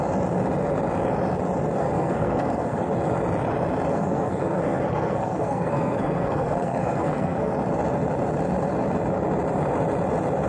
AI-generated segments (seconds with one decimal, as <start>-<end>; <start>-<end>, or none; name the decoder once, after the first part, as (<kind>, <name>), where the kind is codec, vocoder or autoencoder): 1.8-2.9 (codec, SNAC); 3.9-7.5